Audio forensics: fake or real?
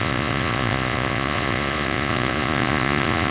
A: fake